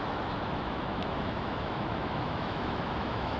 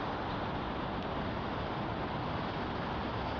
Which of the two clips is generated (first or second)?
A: first